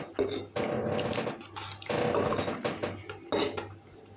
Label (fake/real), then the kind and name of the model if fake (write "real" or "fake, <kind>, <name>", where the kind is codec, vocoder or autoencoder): real